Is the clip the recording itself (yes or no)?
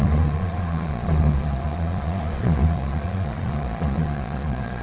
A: no